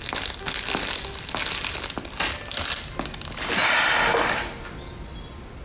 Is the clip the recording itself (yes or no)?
yes